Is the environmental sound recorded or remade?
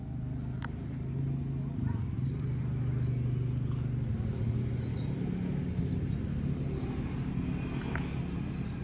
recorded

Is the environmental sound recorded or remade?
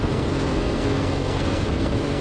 remade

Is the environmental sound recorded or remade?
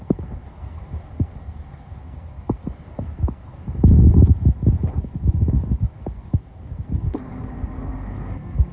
remade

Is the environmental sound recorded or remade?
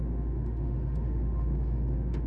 remade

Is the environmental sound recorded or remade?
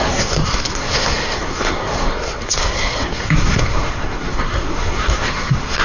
remade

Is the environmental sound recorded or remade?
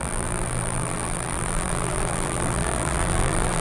remade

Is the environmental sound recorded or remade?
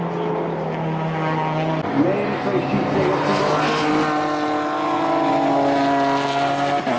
recorded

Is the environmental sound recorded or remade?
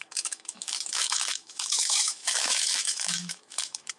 remade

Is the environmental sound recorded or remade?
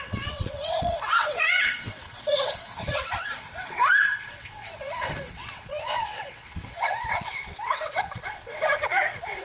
remade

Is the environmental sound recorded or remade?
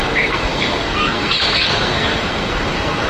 remade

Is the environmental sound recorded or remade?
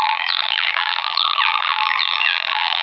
remade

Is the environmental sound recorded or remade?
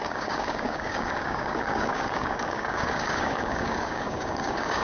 remade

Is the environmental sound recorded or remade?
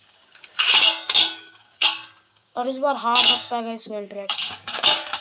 remade